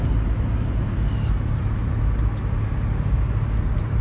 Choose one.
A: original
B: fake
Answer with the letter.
A